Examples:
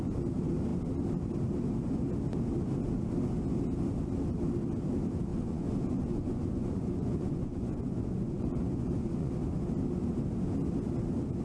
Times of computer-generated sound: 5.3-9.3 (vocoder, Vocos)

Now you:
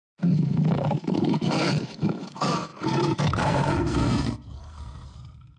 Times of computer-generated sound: 0.0-5.6 (codec, SNAC)

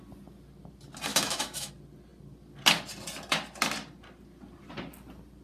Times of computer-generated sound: 1.1-1.7 (autoencoder, DAC-VAE)